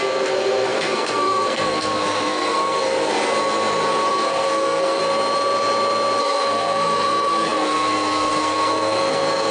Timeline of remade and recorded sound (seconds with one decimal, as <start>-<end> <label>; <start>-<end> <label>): 0.0-3.1 remade; 3.1-4.1 recorded; 4.1-5.0 remade; 5.0-6.2 recorded; 6.2-9.5 remade